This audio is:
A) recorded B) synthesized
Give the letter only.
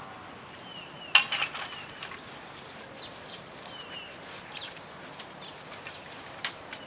A